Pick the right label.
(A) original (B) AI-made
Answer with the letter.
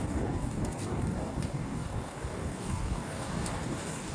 B